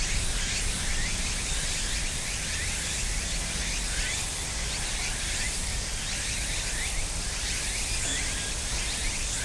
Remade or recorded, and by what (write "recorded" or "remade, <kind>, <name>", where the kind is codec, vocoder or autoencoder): recorded